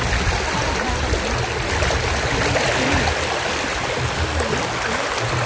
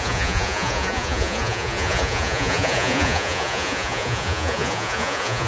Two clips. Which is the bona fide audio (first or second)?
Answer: first